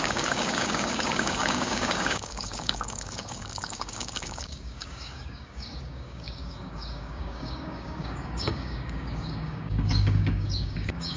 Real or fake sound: fake